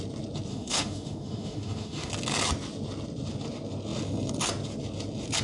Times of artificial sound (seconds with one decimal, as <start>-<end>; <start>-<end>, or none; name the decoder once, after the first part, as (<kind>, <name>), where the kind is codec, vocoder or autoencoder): 0.5-2.1 (autoencoder, DAC-VAE)